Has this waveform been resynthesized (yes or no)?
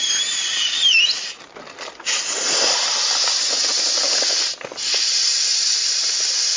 no